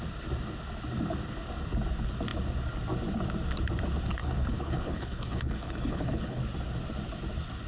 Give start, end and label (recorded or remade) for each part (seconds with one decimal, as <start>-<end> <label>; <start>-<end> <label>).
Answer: 0.0-4.2 recorded; 4.2-6.4 remade; 6.4-7.7 recorded